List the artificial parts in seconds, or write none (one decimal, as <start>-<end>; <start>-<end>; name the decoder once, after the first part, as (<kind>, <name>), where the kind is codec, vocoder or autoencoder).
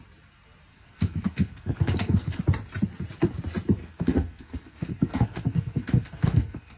0.7-2.4 (codec, SNAC); 3.8-6.8